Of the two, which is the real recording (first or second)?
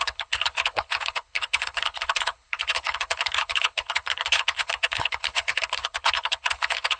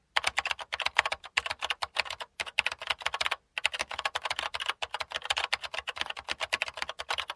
second